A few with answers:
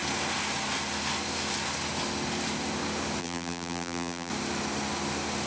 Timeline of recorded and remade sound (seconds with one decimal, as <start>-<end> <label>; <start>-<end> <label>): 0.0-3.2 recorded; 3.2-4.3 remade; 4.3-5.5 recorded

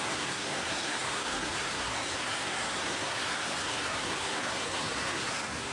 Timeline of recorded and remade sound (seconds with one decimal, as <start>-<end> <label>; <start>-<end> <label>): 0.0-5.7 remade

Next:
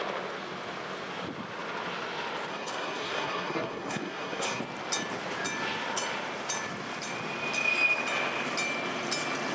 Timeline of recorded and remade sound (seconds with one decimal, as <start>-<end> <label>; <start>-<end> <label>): 0.0-2.5 recorded; 2.5-4.6 remade; 4.6-9.5 recorded

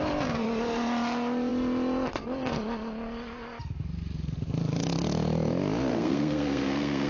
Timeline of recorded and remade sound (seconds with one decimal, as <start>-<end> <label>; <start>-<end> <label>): 0.0-5.9 recorded; 5.9-7.1 remade